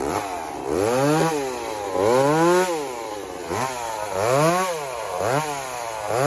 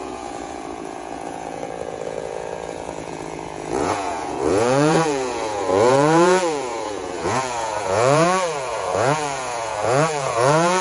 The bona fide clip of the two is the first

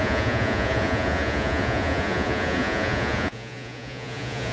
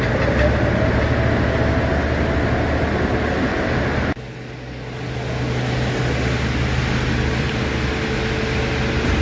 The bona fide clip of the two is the second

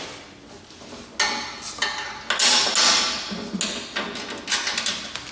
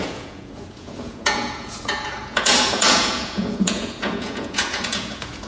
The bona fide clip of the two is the first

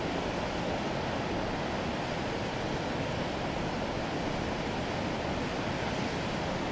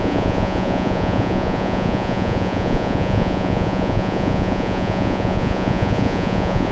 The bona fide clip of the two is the first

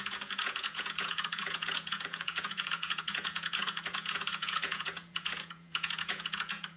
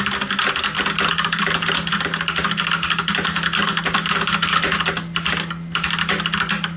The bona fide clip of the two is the second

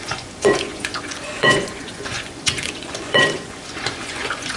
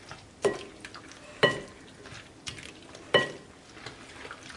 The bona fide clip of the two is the second